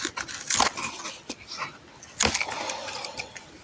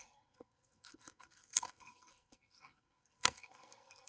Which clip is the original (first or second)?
first